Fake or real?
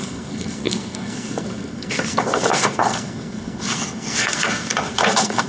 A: fake